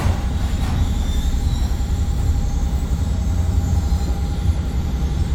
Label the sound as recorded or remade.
remade